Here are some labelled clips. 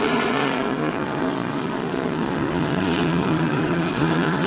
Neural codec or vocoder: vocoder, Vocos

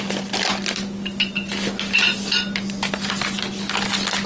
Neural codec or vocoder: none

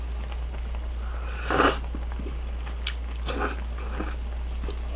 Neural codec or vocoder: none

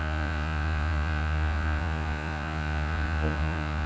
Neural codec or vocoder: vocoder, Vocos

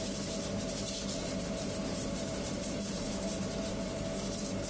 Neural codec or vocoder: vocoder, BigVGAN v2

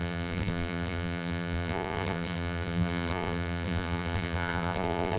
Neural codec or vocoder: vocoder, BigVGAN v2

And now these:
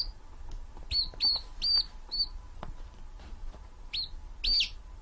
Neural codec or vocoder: none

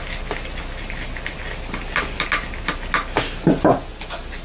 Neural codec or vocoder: none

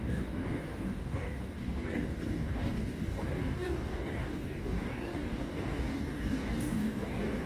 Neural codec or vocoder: codec, DAC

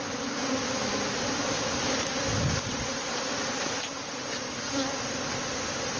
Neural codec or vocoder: vocoder, BigVGAN v2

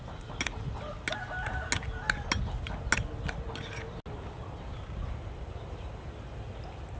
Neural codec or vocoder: none